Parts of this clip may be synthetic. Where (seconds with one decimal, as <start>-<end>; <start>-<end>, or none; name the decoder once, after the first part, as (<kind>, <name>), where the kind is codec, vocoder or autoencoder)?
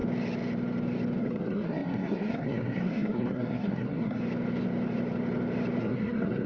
1.2-4.2 (codec, SNAC); 5.8-6.5